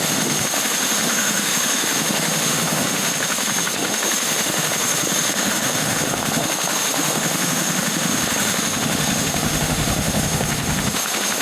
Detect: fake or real fake